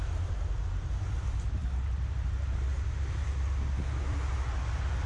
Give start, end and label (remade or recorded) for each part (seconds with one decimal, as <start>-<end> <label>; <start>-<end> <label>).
0.0-5.1 recorded